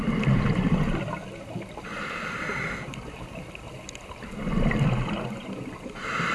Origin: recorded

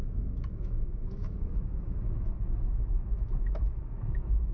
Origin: remade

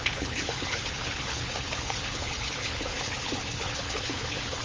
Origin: remade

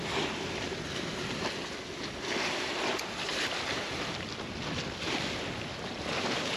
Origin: recorded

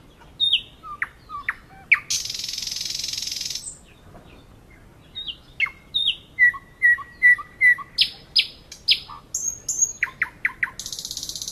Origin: recorded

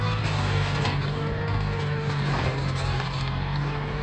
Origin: remade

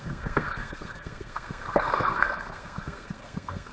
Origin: remade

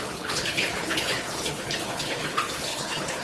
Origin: remade